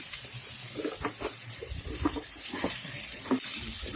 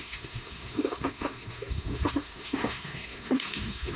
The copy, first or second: second